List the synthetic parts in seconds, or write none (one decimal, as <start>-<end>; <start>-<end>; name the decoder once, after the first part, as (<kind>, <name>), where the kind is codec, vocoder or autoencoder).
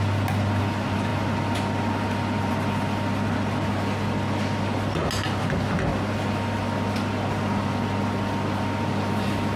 none